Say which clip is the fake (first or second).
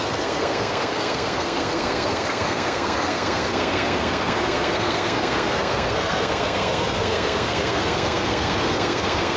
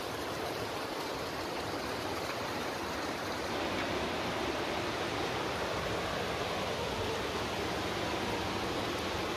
first